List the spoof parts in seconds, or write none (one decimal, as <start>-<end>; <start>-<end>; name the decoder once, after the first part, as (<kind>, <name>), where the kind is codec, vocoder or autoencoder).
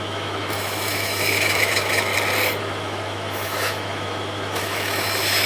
0.0-2.1 (autoencoder, DAC-VAE); 2.6-5.5